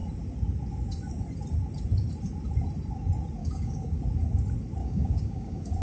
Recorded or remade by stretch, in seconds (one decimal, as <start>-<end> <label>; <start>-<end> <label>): 0.0-3.4 recorded; 3.4-4.0 remade; 4.0-4.8 recorded; 4.8-5.8 remade

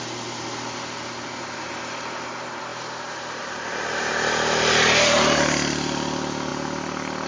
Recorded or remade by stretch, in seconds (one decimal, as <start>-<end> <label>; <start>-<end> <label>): 0.0-2.7 recorded; 2.7-4.1 remade; 4.1-7.3 recorded

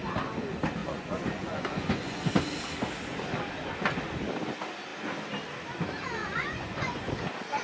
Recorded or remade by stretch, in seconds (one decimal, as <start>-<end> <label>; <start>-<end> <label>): 0.0-0.8 recorded; 0.8-2.3 remade; 2.3-6.2 recorded; 6.2-7.1 remade; 7.1-7.6 recorded

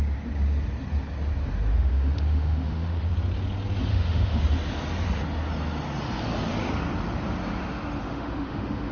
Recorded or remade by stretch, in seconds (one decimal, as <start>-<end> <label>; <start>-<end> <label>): 0.0-1.7 recorded; 1.7-3.1 remade; 3.1-3.9 recorded; 3.9-4.4 remade; 4.4-8.0 recorded; 8.0-8.9 remade

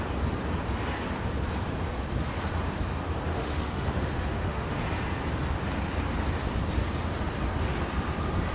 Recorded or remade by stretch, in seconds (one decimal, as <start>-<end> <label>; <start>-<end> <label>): 0.0-3.3 recorded; 3.3-4.8 remade; 4.8-8.5 recorded

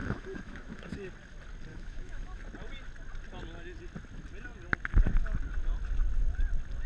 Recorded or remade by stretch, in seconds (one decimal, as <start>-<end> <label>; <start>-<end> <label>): 0.0-0.9 remade; 0.9-1.7 recorded; 1.7-2.4 remade; 2.4-6.9 recorded

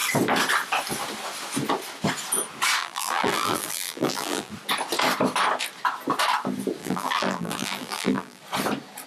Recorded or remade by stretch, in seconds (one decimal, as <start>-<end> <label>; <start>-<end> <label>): 0.0-2.8 recorded; 2.8-4.5 remade; 4.5-6.8 recorded; 6.8-8.4 remade; 8.4-9.1 recorded